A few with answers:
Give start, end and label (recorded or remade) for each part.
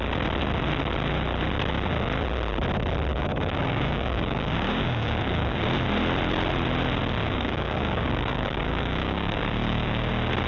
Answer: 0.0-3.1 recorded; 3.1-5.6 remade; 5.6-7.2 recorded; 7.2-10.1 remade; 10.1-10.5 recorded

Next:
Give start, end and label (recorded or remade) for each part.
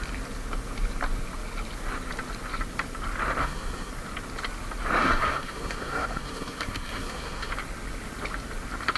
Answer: 0.0-3.4 recorded; 3.4-3.9 remade; 3.9-5.0 recorded; 5.0-7.5 remade; 7.5-9.0 recorded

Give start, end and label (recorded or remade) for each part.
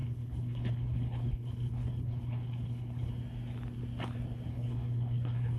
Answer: 0.0-3.1 remade; 3.1-4.5 recorded; 4.5-5.6 remade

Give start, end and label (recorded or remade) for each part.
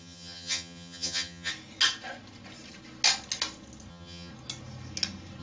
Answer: 0.0-1.5 remade; 1.5-3.9 recorded; 3.9-4.3 remade; 4.3-5.4 recorded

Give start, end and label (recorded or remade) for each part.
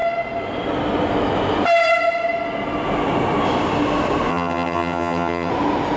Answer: 0.0-4.3 recorded; 4.3-5.5 remade; 5.5-6.0 recorded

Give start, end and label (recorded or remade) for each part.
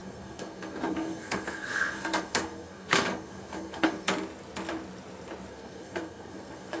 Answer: 0.0-4.1 remade; 4.1-5.5 recorded; 5.5-6.8 remade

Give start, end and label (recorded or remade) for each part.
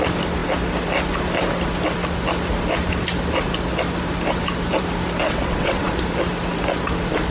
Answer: 0.0-5.2 recorded; 5.2-5.9 remade; 5.9-7.3 recorded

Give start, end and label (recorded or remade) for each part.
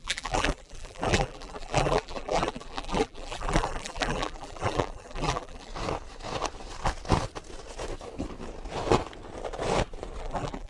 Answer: 0.0-5.7 remade; 5.7-10.2 recorded; 10.2-10.7 remade